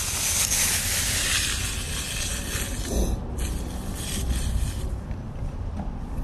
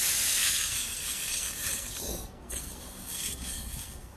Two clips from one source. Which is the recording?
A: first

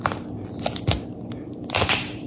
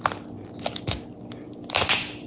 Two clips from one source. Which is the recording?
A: second